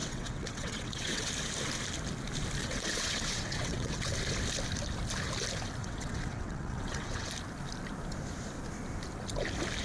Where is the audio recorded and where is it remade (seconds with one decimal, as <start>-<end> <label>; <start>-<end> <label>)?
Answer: 0.0-1.3 remade; 1.3-2.6 recorded; 2.6-4.1 remade; 4.1-5.8 recorded; 5.8-7.3 remade; 7.3-9.8 recorded

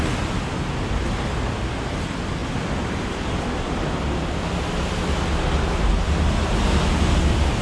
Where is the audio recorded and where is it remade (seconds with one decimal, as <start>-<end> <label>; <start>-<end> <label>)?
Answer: 0.0-7.6 recorded

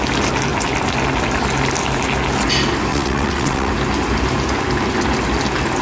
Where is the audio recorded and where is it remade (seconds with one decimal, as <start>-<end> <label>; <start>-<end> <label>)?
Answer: 0.0-2.9 recorded; 2.9-3.7 remade; 3.7-5.8 recorded

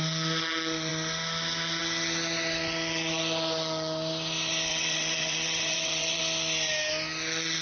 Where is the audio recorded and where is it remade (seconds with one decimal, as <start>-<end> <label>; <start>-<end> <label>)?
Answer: 0.0-4.7 recorded; 4.7-6.2 remade; 6.2-7.6 recorded

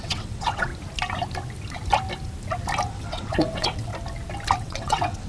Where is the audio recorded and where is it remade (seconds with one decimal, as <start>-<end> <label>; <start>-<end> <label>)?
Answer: 0.0-0.7 remade; 0.7-2.9 recorded; 2.9-3.9 remade; 3.9-4.6 recorded; 4.6-5.3 remade

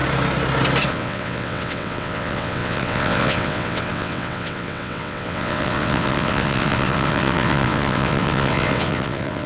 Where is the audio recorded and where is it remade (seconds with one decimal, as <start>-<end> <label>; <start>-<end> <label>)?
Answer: 0.0-0.9 recorded; 0.9-9.5 remade